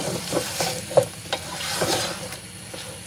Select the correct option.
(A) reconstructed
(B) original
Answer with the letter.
B